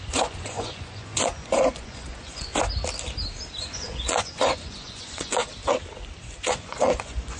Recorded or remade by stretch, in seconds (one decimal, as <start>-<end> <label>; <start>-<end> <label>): 0.0-2.5 remade; 2.5-3.6 recorded; 3.6-5.4 remade; 5.4-6.5 recorded; 6.5-7.4 remade